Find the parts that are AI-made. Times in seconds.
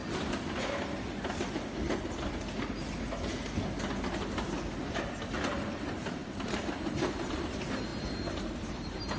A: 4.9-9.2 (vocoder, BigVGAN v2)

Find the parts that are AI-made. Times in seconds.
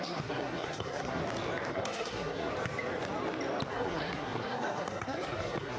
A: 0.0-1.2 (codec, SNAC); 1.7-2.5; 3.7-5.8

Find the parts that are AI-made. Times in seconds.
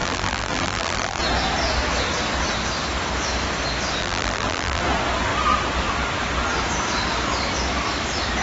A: 0.0-1.2 (vocoder, BigVGAN v2); 4.0-4.8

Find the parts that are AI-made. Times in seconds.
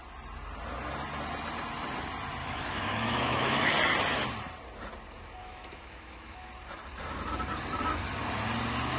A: 2.4-3.7 (autoencoder, DAC-VAE); 5.4-6.5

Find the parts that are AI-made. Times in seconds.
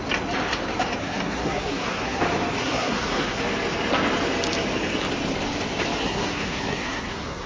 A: 1.0-2.2 (codec, SNAC); 2.6-3.4; 6.0-7.5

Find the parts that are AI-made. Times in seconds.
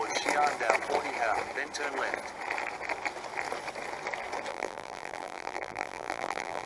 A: 4.5-6.7 (vocoder, BigVGAN v2)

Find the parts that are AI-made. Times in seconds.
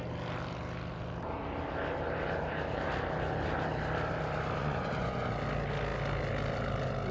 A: 4.6-5.3 (vocoder, Vocos)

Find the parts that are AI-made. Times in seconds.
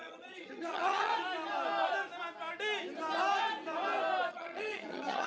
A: 0.0-1.1 (vocoder, HiFi-GAN); 4.3-5.3